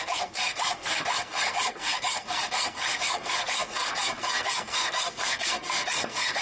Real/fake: fake